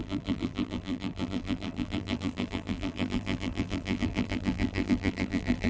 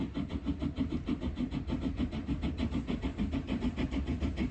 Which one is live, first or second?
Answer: second